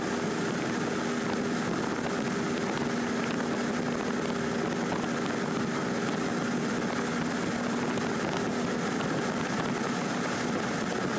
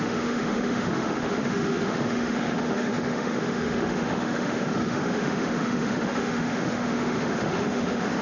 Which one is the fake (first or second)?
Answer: second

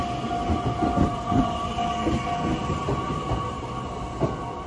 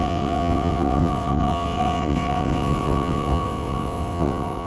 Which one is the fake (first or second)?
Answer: second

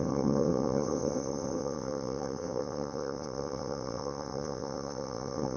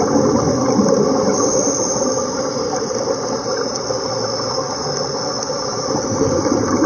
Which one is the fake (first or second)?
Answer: first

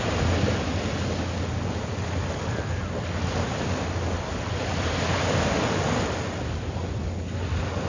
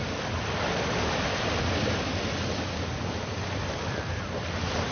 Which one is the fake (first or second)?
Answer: second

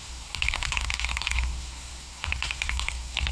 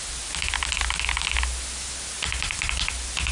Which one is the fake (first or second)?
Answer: first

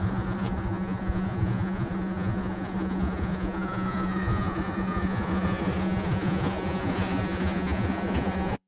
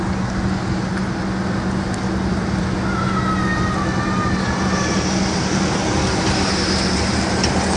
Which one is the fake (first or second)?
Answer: first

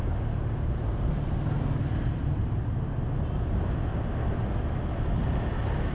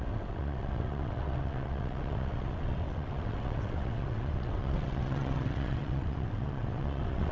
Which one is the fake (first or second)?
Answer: second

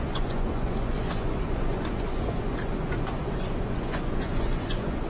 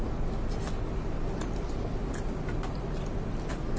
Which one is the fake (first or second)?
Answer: first